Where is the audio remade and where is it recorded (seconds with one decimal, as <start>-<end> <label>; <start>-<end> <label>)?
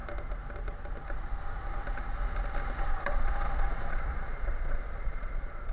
0.0-2.9 recorded; 2.9-5.7 remade